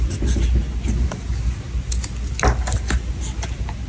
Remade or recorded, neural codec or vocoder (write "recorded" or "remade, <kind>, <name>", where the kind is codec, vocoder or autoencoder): recorded